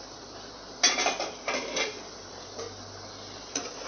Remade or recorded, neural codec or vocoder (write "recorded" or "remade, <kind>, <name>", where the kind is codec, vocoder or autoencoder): recorded